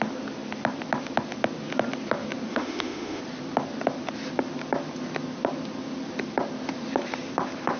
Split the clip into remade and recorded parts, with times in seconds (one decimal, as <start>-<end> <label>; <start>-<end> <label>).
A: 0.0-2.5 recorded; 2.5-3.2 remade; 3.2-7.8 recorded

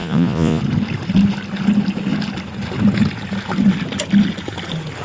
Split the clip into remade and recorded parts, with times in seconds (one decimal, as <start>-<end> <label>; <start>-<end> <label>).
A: 0.0-0.6 remade; 0.6-5.0 recorded

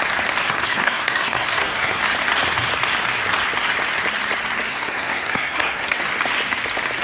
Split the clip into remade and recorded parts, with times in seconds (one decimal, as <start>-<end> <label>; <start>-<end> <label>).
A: 0.0-0.4 recorded; 0.4-2.0 remade; 2.0-4.7 recorded; 4.7-6.0 remade; 6.0-7.0 recorded